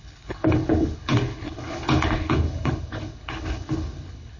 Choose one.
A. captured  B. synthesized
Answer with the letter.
B